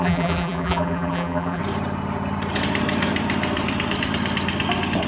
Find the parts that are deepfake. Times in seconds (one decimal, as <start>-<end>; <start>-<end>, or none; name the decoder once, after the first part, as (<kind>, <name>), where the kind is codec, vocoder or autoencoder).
0.0-1.6 (vocoder, BigVGAN v2)